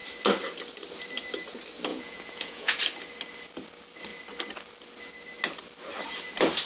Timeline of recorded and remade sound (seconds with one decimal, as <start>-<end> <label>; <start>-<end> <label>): 0.0-1.9 recorded; 1.9-2.8 remade; 2.8-6.7 recorded